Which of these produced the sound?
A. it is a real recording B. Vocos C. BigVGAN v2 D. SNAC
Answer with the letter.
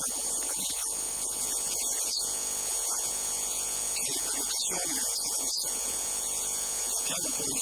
B